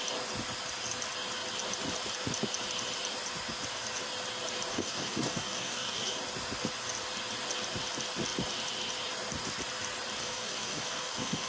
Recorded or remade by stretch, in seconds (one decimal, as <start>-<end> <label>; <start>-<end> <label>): 0.0-4.7 recorded; 4.7-6.2 remade; 6.2-10.2 recorded; 10.2-11.5 remade